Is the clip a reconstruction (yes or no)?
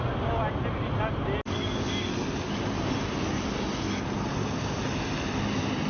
no